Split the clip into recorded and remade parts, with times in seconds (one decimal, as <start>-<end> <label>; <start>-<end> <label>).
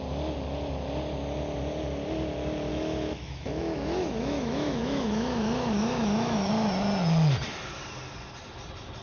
0.0-2.7 recorded; 2.7-6.5 remade; 6.5-9.0 recorded